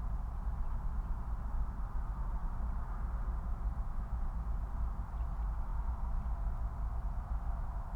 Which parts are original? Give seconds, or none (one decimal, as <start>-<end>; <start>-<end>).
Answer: 0.0-8.0